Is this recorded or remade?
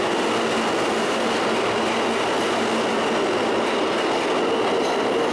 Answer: recorded